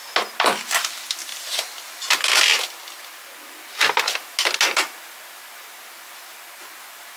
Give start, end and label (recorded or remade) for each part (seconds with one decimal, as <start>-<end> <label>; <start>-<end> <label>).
0.0-7.2 recorded